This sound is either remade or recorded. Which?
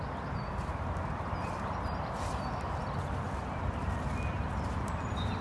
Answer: recorded